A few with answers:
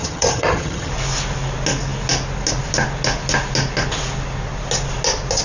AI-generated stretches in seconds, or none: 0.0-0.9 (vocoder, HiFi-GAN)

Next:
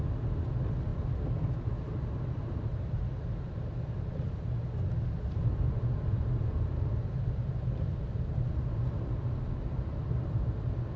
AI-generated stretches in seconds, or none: none

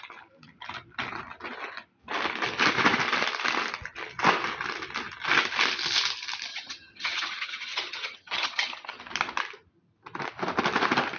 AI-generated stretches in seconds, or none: 6.5-9.0 (vocoder, HiFi-GAN)

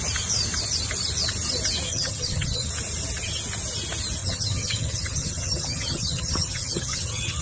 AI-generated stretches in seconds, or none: 1.9-2.7 (vocoder, HiFi-GAN); 4.2-7.4

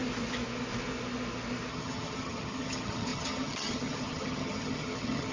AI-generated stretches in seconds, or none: 1.7-5.3 (vocoder, HiFi-GAN)

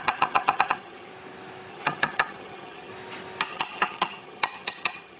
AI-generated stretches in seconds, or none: 0.0-1.1 (vocoder, HiFi-GAN); 1.7-2.9; 3.5-5.2

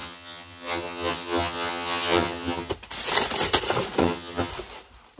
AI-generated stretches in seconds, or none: 0.0-2.7 (vocoder, HiFi-GAN); 4.0-4.5